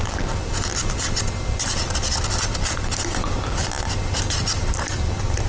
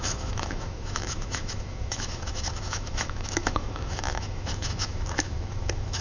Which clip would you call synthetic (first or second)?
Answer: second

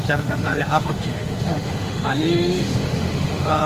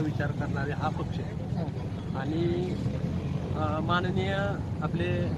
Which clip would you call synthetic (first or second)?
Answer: first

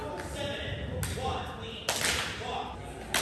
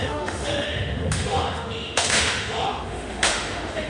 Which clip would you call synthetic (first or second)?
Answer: second